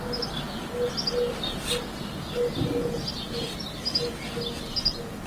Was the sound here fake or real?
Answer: real